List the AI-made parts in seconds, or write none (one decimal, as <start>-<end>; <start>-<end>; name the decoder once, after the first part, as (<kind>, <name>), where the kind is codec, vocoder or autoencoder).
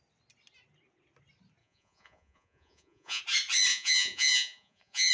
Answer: 1.6-3.2 (vocoder, Vocos); 3.7-5.1